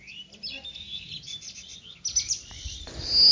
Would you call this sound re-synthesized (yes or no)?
no